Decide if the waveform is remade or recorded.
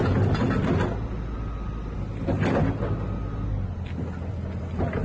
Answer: recorded